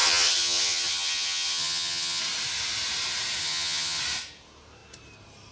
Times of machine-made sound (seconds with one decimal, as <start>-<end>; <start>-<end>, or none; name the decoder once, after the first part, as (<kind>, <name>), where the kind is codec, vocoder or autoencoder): 0.0-2.2 (vocoder, HiFi-GAN); 3.4-4.0